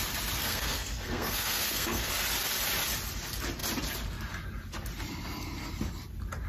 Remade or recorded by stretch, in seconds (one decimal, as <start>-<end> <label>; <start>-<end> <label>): 0.0-0.4 recorded; 0.4-2.1 remade; 2.1-6.5 recorded